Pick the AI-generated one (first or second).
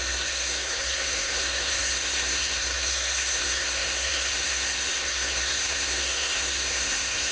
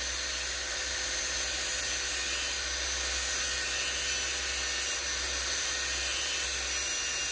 first